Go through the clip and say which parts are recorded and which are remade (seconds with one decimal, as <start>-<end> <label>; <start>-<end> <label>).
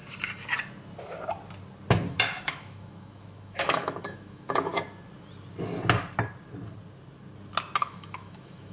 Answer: 0.0-2.1 recorded; 2.1-4.7 remade; 4.7-7.8 recorded; 7.8-8.7 remade